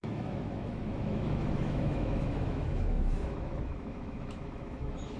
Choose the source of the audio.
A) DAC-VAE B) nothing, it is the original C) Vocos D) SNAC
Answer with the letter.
A